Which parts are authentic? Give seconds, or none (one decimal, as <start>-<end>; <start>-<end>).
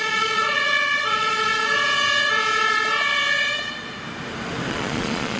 1.5-4.7